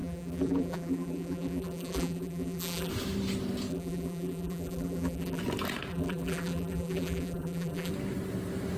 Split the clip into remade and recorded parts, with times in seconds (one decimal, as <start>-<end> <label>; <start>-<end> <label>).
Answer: 0.0-2.9 remade; 2.9-3.7 recorded; 3.7-5.4 remade; 5.4-5.9 recorded; 5.9-7.9 remade; 7.9-8.8 recorded